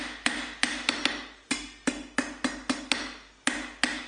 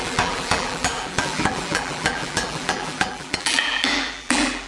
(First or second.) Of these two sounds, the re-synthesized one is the second